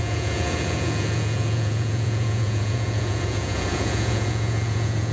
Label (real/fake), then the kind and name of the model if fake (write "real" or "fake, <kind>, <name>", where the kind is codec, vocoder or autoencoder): fake, vocoder, Vocos